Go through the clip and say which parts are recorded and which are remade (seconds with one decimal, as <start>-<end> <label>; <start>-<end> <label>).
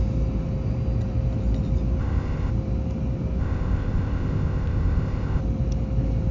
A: 0.0-2.0 recorded; 2.0-2.5 remade; 2.5-3.4 recorded; 3.4-5.4 remade; 5.4-6.3 recorded